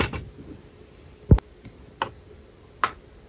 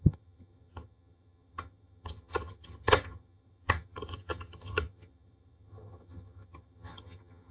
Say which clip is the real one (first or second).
first